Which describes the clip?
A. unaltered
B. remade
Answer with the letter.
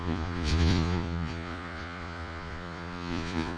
B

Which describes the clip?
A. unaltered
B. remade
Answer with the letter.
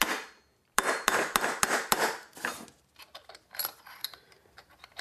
B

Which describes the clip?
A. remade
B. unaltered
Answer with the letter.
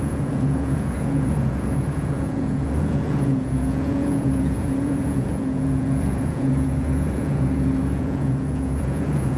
A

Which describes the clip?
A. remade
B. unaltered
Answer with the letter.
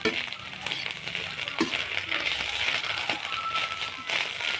B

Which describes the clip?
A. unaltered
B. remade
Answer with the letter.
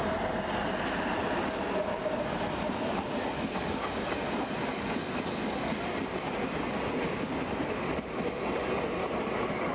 A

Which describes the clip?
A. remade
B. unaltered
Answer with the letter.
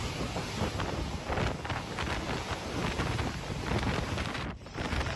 B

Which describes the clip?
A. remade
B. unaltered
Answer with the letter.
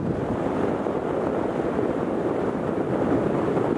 B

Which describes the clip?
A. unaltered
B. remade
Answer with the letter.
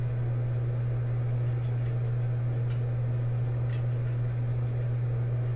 A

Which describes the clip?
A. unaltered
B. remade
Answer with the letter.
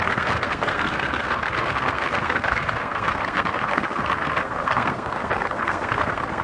B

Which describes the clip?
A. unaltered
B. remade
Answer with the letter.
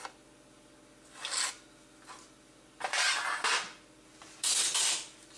A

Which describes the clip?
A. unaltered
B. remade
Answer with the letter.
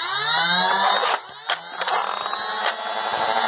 A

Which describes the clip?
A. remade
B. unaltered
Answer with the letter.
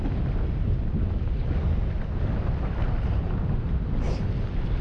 B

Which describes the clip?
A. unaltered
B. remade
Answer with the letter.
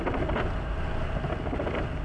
A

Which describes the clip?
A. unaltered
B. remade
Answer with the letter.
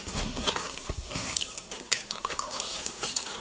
B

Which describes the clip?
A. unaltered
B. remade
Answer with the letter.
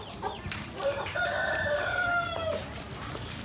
B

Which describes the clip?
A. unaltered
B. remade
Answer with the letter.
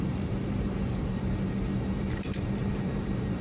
B